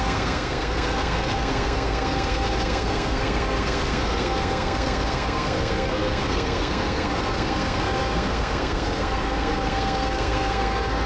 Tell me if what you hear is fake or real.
fake